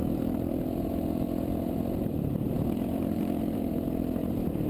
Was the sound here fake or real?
fake